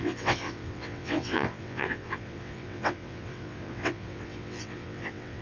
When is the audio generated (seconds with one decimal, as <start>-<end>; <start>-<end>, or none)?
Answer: 0.0-5.4